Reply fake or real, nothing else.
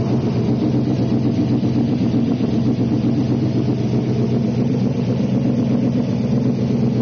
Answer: real